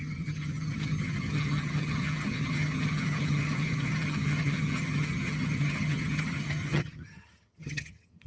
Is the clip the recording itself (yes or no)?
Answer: no